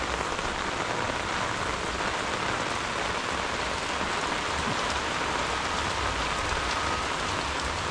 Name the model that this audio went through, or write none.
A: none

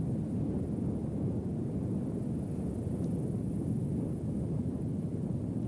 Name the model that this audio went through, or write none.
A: none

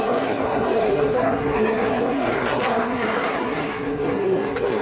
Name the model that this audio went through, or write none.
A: codec, SNAC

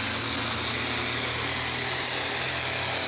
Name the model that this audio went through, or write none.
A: none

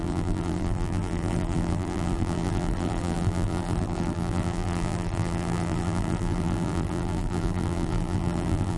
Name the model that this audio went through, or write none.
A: vocoder, BigVGAN v2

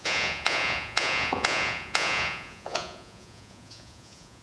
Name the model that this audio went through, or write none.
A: vocoder, Vocos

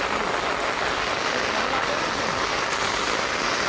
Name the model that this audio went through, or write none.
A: none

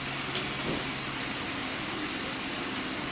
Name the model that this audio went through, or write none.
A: none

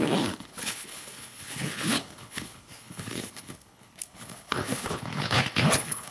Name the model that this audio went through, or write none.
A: codec, HILCodec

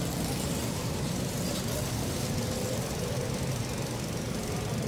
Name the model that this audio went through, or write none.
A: none